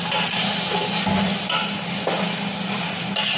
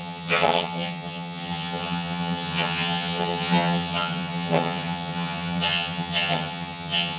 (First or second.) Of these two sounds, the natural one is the first